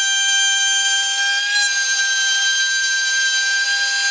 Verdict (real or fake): real